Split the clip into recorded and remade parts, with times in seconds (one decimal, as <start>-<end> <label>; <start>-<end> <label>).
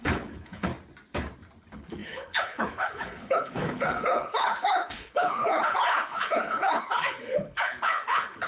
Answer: 0.0-0.7 remade; 0.7-1.6 recorded; 1.6-8.5 remade